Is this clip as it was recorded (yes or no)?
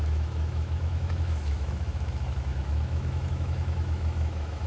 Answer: no